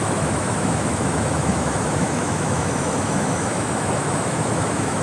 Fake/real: fake